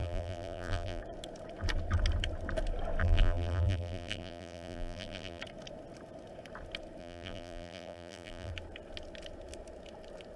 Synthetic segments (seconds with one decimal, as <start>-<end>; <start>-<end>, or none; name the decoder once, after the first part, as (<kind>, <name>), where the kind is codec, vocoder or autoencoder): 0.0-1.0 (vocoder, BigVGAN v2); 3.0-5.4; 7.0-8.5